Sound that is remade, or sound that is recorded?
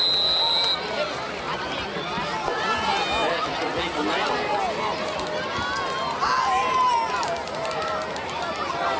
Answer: recorded